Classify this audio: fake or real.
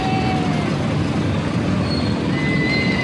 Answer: real